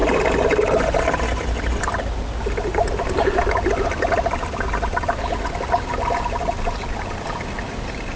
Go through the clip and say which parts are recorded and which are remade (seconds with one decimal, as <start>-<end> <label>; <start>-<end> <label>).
0.0-8.2 recorded